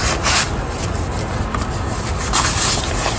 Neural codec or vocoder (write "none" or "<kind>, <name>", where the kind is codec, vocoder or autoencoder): none